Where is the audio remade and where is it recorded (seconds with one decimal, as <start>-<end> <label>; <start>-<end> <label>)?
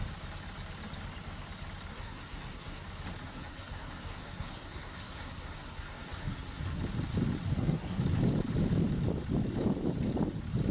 0.0-1.9 recorded; 1.9-2.8 remade; 2.8-3.2 recorded; 3.2-6.8 remade; 6.8-7.5 recorded; 7.5-8.0 remade; 8.0-10.7 recorded